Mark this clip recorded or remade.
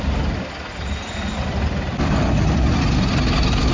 recorded